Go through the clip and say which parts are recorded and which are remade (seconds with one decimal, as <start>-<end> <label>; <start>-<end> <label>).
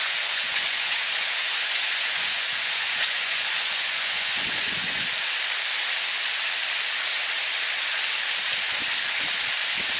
0.0-5.0 remade; 5.0-10.0 recorded